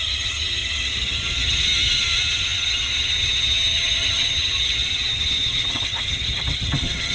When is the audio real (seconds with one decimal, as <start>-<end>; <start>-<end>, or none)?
none